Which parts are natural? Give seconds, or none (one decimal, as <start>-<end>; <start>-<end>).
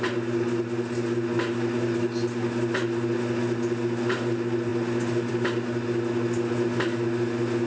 0.0-7.7